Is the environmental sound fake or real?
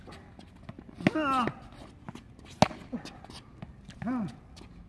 real